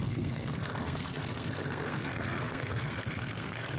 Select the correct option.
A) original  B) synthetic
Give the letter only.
B